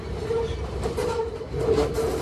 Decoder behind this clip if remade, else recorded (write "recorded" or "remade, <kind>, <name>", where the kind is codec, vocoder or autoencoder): remade, vocoder, BigVGAN v2